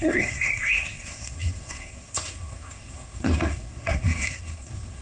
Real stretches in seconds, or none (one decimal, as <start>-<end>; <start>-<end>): none